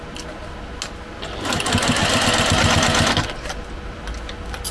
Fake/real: real